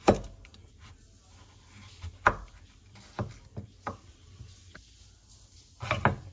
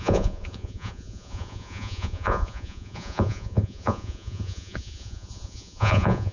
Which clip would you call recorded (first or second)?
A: first